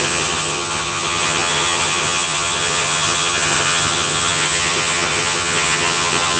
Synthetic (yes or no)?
yes